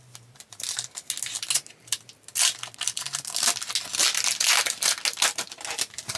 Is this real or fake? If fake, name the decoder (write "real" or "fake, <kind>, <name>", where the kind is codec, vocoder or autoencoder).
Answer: real